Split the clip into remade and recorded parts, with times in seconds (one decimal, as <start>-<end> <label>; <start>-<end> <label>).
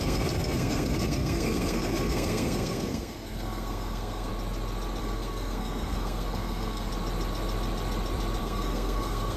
0.0-4.3 remade; 4.3-5.0 recorded; 5.0-6.9 remade; 6.9-8.4 recorded; 8.4-9.4 remade